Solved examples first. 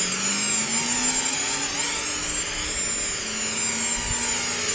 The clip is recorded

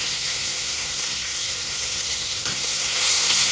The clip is remade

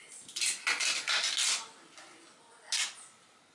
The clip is recorded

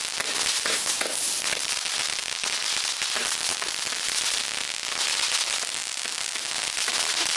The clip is recorded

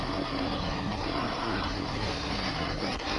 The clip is remade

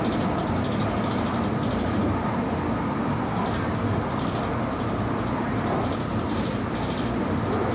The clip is recorded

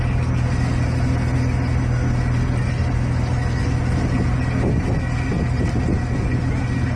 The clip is recorded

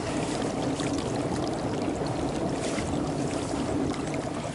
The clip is recorded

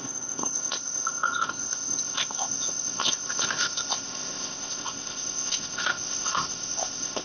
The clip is remade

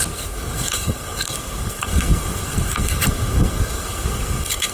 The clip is remade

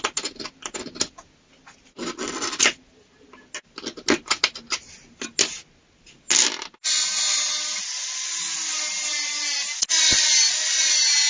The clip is recorded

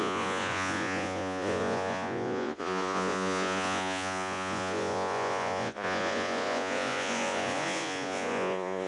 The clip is remade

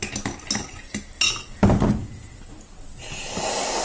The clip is recorded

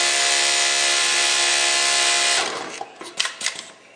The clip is recorded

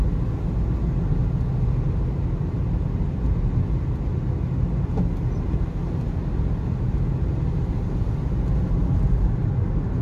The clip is recorded